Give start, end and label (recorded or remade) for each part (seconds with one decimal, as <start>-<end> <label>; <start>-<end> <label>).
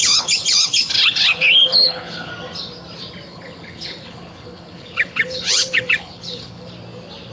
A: 0.0-2.3 remade; 2.3-3.3 recorded; 3.3-6.7 remade; 6.7-7.3 recorded